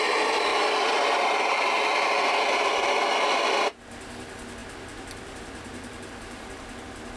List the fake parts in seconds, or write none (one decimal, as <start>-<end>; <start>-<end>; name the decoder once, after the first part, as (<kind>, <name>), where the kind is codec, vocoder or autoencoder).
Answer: 0.5-1.5 (vocoder, BigVGAN v2); 1.9-3.1; 4.6-6.8